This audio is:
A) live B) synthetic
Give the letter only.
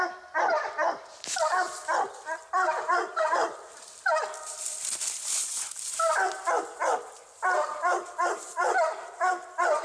B